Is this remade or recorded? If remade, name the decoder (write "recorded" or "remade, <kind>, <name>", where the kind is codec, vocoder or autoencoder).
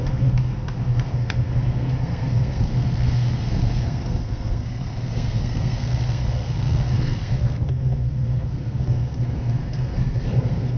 remade, codec, SNAC